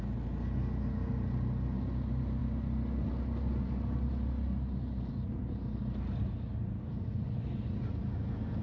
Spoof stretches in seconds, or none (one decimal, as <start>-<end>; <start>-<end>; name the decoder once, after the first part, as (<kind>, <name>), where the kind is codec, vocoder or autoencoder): none